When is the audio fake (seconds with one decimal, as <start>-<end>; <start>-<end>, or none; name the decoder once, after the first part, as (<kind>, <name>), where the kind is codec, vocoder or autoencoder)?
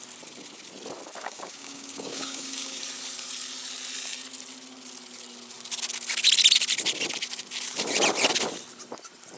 1.2-2.8 (codec, DAC)